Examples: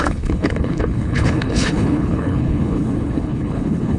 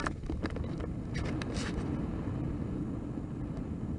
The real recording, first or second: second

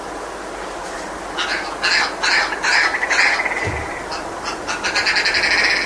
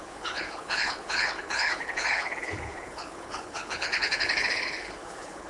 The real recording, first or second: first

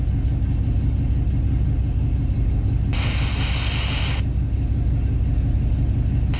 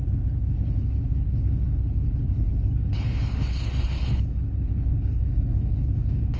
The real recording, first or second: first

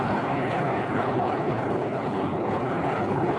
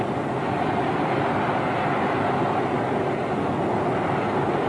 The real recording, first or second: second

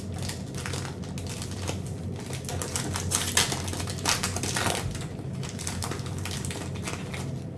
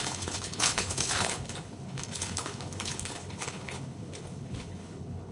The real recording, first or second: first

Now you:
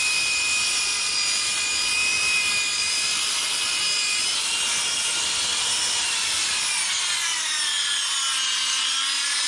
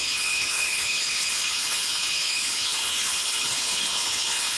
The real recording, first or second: first